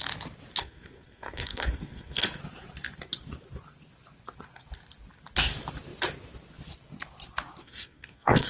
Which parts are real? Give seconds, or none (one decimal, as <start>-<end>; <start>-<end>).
0.0-0.6; 2.4-7.6